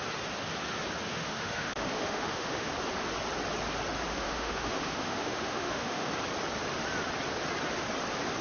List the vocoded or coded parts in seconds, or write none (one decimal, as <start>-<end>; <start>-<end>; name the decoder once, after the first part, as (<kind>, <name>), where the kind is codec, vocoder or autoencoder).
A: 1.1-2.7 (autoencoder, DAC-VAE); 4.1-6.1